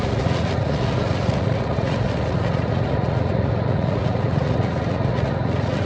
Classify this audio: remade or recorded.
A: remade